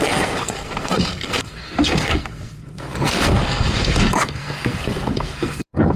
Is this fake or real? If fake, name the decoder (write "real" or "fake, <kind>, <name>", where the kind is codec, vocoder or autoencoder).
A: fake, codec, SNAC